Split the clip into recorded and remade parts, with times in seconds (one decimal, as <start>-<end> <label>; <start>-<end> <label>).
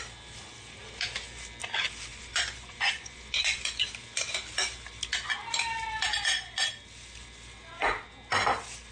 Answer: 0.0-2.1 recorded; 2.1-3.6 remade; 3.6-8.9 recorded